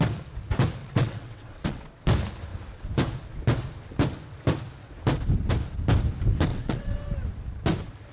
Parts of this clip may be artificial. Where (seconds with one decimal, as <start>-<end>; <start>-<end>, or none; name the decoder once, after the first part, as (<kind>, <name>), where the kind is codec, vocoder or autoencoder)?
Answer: 0.8-1.9 (vocoder, WaveNeXt); 6.5-7.0